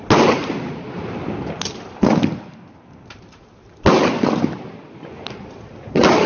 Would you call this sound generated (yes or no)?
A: no